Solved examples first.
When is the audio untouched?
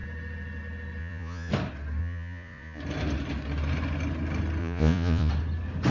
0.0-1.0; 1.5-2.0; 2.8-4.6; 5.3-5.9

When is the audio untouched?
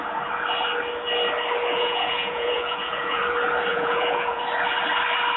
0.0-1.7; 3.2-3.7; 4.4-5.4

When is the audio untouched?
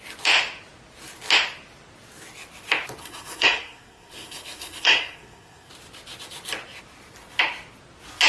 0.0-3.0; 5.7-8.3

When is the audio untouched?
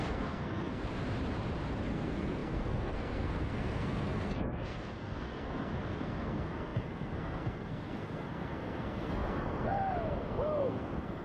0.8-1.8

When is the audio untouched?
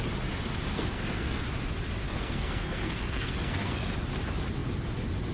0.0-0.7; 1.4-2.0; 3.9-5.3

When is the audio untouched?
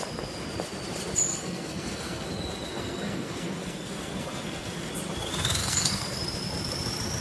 0.0-1.3; 2.3-2.7; 4.9-5.6; 6.2-7.2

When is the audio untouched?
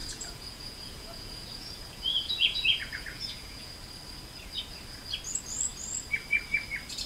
3.7-7.1